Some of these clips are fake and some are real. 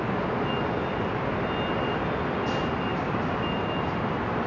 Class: real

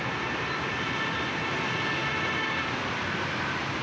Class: real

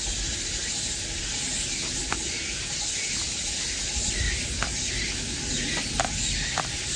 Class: real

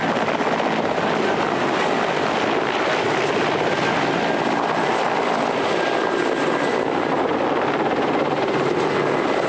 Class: real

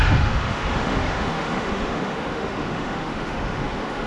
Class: fake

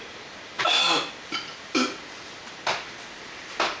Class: real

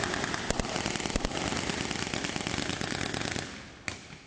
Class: real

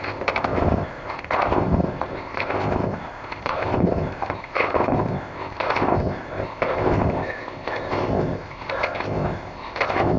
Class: fake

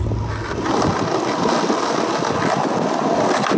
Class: real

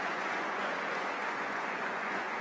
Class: fake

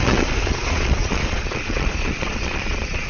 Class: fake